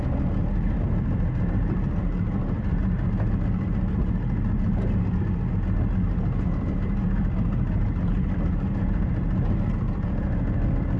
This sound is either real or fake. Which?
real